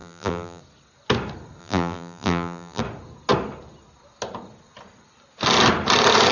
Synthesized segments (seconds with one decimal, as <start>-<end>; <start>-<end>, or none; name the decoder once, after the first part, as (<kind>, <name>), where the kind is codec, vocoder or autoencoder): 0.0-0.6 (vocoder, BigVGAN v2); 1.6-2.8